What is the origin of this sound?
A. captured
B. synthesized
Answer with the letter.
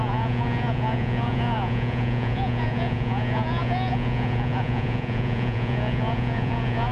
B